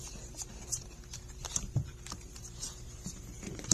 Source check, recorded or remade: remade